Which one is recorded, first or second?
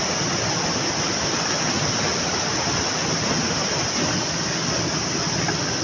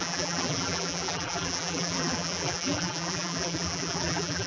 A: first